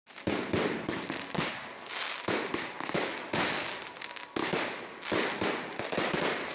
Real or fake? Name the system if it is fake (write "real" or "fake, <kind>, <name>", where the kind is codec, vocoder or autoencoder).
real